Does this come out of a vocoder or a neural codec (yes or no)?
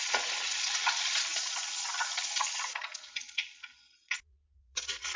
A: yes